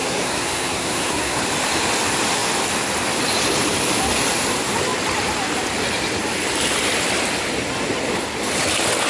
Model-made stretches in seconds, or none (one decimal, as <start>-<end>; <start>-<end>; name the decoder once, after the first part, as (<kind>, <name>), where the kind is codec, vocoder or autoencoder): 0.0-1.4 (codec, SNAC)